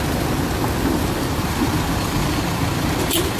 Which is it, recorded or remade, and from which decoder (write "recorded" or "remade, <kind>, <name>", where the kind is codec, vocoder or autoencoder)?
recorded